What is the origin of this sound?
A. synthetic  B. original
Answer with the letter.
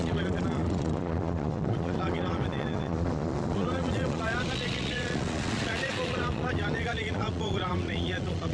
A